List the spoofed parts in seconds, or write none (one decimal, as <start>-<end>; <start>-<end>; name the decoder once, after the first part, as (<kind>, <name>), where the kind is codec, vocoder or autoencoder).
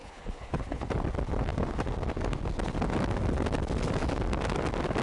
0.0-0.9 (codec, HILCodec)